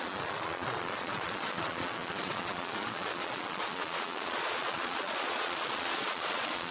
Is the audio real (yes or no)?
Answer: no